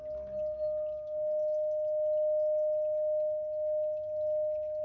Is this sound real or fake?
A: real